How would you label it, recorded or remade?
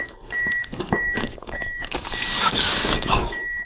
remade